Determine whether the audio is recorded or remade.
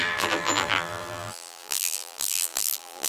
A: remade